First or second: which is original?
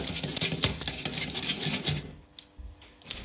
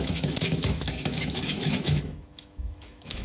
first